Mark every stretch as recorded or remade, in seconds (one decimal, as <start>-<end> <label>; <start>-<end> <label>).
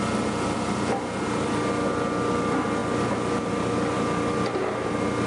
0.0-5.3 recorded